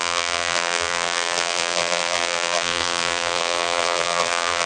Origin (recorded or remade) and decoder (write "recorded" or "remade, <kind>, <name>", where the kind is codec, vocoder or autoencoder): remade, vocoder, BigVGAN v2